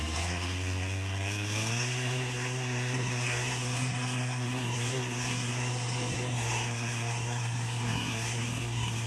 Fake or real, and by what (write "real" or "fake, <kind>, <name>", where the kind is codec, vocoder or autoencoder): fake, codec, SNAC